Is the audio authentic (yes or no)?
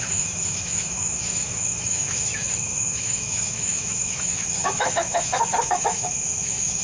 no